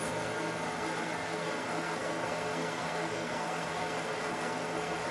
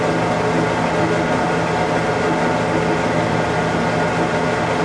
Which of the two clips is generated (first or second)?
first